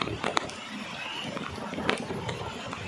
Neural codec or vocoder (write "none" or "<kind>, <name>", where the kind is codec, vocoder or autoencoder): none